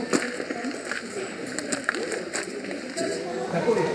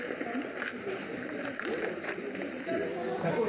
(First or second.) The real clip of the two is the second